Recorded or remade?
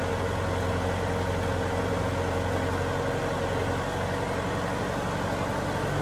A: recorded